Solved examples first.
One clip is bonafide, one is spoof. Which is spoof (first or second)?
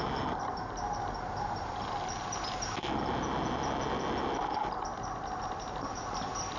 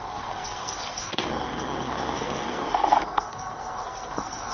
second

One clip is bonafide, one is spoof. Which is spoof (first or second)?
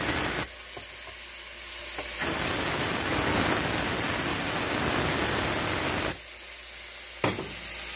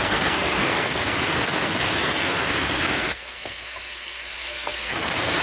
second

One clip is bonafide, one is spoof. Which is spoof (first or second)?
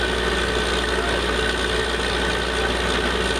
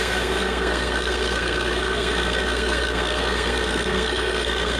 second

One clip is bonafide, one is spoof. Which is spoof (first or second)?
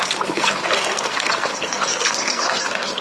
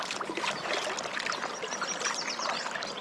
first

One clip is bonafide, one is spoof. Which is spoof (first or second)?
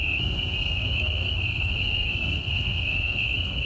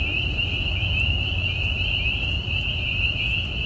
first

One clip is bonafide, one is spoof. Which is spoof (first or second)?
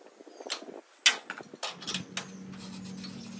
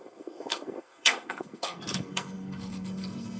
second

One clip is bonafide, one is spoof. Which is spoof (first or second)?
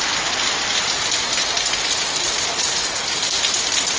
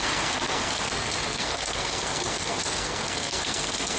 second